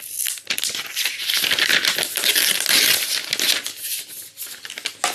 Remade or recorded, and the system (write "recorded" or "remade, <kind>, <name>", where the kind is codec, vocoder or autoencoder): recorded